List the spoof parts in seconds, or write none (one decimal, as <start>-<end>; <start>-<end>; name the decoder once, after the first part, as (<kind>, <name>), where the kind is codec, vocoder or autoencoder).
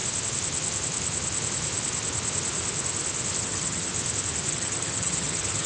3.4-3.9 (vocoder, HiFi-GAN); 4.5-5.7